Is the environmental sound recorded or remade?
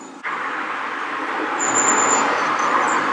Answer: recorded